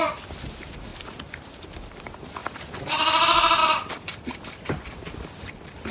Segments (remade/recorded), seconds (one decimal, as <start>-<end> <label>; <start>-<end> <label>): 0.0-0.9 recorded; 0.9-1.4 remade; 1.4-2.4 recorded; 2.4-2.9 remade; 2.9-3.6 recorded; 3.6-5.1 remade; 5.1-5.9 recorded